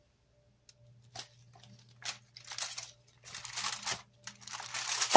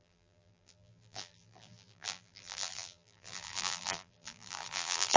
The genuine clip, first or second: first